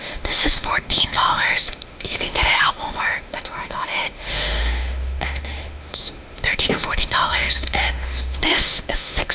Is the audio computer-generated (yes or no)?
yes